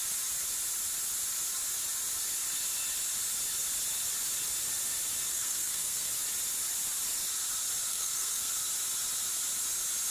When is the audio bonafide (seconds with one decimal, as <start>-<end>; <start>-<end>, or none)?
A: 0.0-5.3; 6.1-7.9; 8.5-10.1